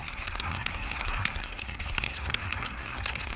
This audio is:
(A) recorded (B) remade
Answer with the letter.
B